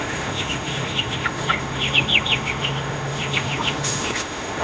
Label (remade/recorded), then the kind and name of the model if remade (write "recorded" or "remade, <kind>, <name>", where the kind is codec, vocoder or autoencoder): remade, autoencoder, DAC-VAE